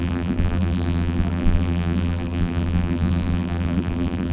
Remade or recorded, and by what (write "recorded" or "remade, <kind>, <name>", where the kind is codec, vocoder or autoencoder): remade, vocoder, BigVGAN v2